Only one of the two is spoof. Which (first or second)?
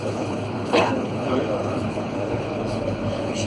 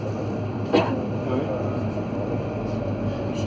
first